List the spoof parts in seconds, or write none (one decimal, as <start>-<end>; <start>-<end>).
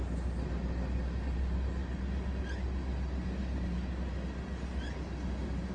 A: none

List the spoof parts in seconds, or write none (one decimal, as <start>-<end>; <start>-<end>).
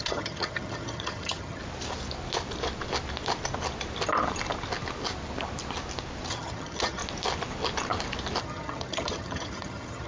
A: 0.0-1.6; 6.3-7.0; 8.4-10.1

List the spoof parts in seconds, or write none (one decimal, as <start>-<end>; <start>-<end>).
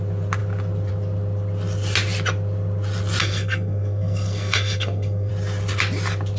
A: 3.2-5.3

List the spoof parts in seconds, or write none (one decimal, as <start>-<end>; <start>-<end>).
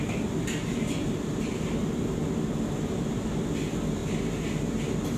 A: none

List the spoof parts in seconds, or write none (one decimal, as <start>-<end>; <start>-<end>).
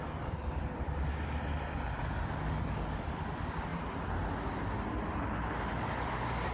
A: none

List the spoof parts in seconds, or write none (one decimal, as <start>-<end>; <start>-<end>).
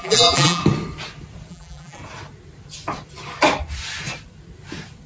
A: 0.0-0.6; 1.5-2.0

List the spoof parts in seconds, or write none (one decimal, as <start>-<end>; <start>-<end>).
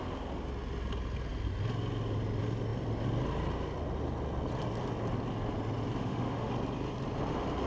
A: 6.0-6.5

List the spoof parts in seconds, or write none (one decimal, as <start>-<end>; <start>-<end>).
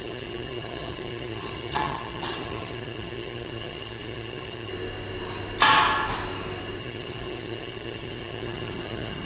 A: 0.0-4.7; 6.8-9.3